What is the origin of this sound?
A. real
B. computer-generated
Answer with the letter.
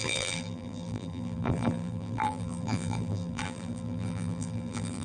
B